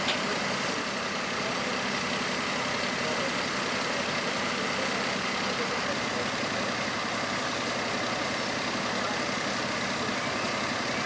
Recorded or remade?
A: recorded